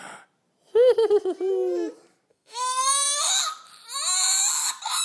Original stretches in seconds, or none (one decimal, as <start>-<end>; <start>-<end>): 0.0-2.3; 3.3-5.0